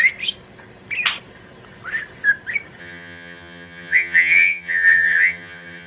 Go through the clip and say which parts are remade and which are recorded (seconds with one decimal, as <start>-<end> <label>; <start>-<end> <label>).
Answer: 0.0-2.8 recorded; 2.8-5.9 remade